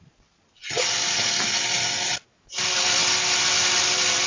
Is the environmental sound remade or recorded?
recorded